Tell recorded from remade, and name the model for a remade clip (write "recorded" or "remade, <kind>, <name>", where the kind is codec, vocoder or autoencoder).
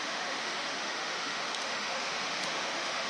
remade, autoencoder, DAC-VAE